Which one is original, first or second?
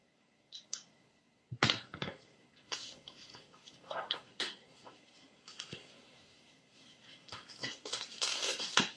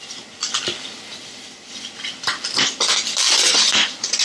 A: second